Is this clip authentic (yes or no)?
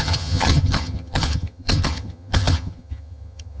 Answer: no